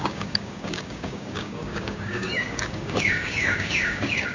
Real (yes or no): no